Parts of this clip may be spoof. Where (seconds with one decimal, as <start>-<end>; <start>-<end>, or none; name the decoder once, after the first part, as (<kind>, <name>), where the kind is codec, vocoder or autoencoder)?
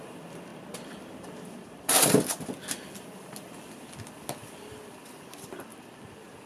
none